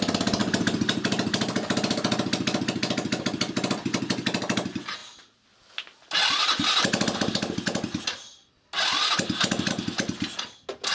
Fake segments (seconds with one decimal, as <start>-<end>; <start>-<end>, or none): none